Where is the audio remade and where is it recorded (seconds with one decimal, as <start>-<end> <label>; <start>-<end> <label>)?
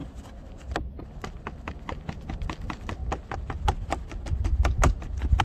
0.0-3.0 remade; 3.0-5.4 recorded